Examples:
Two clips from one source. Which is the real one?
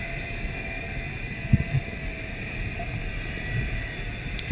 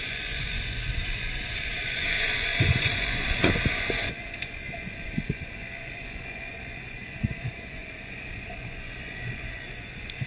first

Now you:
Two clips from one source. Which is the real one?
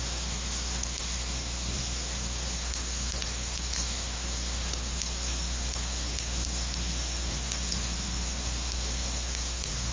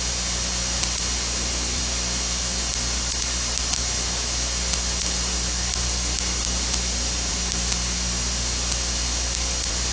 second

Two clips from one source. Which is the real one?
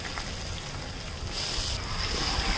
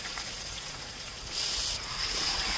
first